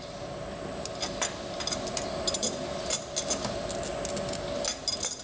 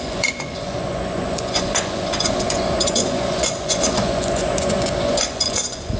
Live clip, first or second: first